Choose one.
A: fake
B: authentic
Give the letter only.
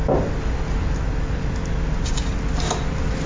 B